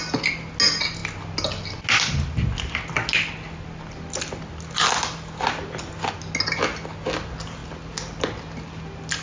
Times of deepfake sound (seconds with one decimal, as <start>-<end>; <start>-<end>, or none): none